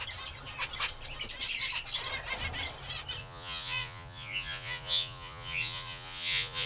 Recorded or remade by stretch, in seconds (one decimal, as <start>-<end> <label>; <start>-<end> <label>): 0.0-3.2 recorded; 3.2-6.7 remade